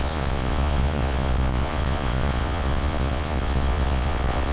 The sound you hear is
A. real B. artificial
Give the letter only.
B